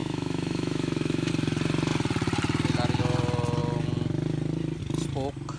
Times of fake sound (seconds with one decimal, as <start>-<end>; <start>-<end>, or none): 0.0-1.3